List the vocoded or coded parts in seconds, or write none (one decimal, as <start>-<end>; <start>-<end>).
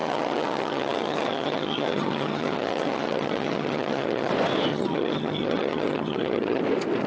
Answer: 0.0-4.3; 4.7-6.6